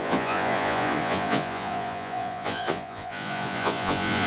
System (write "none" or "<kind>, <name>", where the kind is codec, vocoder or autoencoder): vocoder, Vocos